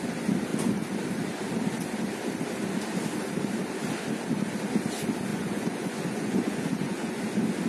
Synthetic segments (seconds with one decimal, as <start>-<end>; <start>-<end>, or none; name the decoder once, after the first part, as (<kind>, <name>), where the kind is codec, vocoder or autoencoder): 5.3-7.2 (vocoder, Vocos)